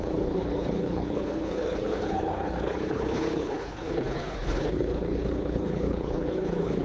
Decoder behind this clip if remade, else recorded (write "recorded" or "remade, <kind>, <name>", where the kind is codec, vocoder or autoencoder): remade, codec, HILCodec